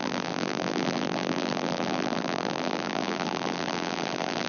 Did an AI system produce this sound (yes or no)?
yes